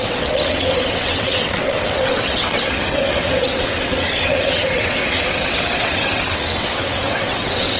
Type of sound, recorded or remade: remade